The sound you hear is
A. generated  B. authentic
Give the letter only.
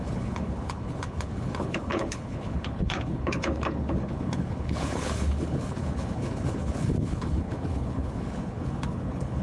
A